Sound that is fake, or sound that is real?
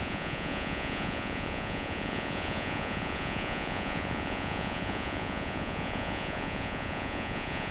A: fake